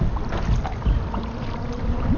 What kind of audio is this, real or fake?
real